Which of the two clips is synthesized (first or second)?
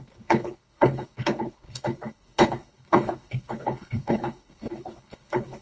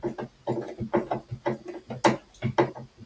first